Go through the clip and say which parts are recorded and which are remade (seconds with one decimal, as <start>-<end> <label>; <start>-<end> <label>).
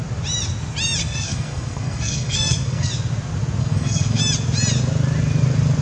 0.0-1.0 recorded; 1.0-2.9 remade; 2.9-3.6 recorded; 3.6-4.2 remade; 4.2-5.8 recorded